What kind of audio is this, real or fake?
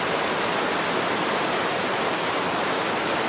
real